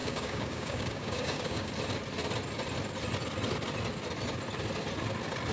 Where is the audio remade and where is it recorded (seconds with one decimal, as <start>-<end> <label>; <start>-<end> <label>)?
0.0-1.7 remade; 1.7-5.5 recorded